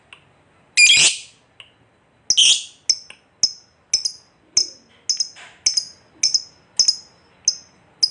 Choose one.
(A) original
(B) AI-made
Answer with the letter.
A